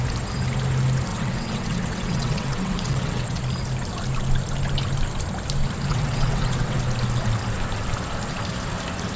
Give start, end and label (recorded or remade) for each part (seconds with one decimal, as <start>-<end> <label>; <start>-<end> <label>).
0.0-1.1 recorded; 1.1-3.4 remade; 3.4-5.9 recorded; 5.9-6.8 remade; 6.8-9.2 recorded